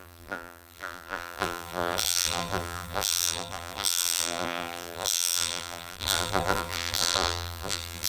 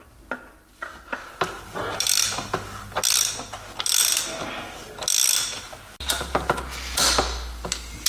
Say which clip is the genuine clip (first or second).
second